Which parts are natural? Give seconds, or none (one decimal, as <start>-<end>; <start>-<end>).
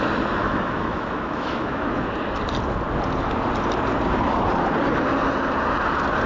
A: 0.0-0.4; 2.1-6.3